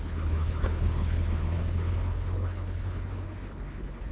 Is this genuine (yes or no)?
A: no